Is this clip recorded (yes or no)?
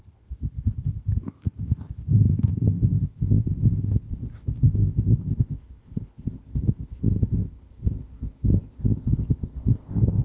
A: no